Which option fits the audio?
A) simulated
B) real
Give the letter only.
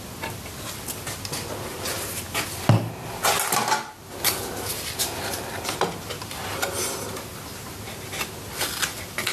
B